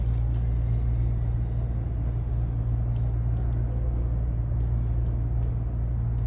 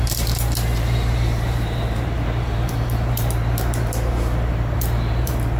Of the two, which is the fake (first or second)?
second